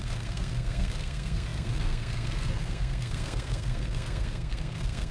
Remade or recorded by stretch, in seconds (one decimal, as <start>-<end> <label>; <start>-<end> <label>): 0.0-5.1 remade